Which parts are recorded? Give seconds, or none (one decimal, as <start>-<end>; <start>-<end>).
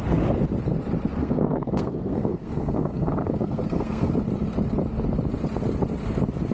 0.0-1.2; 4.1-6.5